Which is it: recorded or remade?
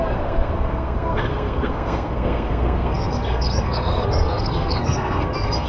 remade